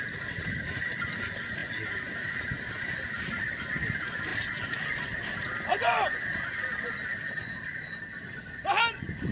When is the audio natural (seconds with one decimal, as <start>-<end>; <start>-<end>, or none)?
0.0-9.3